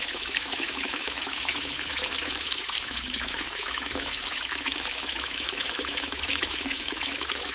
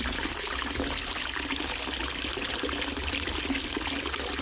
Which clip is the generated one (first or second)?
first